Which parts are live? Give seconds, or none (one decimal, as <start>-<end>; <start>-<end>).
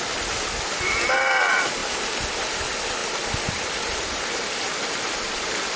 0.0-3.0